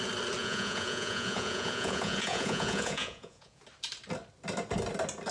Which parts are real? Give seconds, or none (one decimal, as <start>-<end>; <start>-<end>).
0.0-0.4; 3.6-5.3